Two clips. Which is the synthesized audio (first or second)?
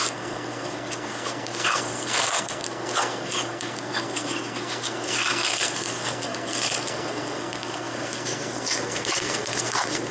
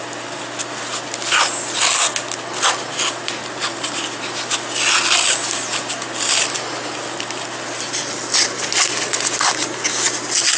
first